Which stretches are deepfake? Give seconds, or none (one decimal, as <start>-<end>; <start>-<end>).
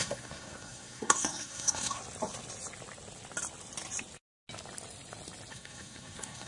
0.0-2.0; 5.5-6.5